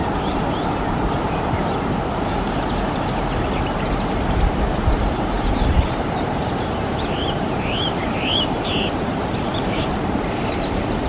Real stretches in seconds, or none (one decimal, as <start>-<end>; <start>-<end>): 0.0-1.1